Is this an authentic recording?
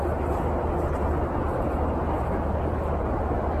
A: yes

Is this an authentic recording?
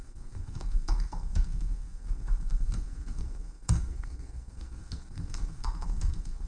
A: no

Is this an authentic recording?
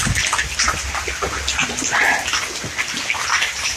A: yes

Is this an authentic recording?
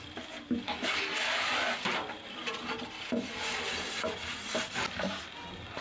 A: yes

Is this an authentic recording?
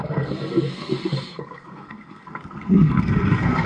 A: no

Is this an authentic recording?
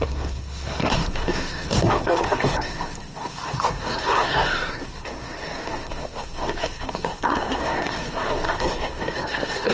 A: no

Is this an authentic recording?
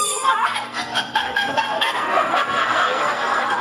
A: no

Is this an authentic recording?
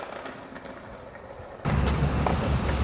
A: yes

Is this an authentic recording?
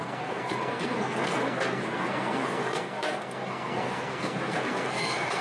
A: no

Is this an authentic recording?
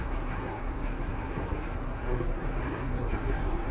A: no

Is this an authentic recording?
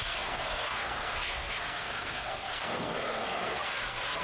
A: no